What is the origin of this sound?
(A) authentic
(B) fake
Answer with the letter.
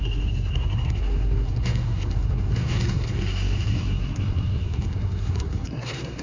B